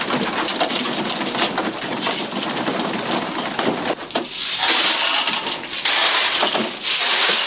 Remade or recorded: recorded